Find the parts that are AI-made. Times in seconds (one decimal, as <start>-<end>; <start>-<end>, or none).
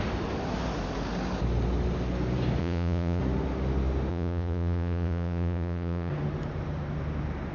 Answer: 2.6-3.2; 4.1-6.1